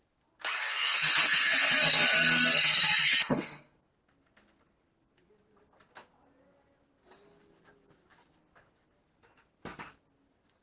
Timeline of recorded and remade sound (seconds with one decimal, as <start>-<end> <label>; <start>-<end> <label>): 0.0-0.6 recorded; 0.6-3.8 remade; 3.8-10.6 recorded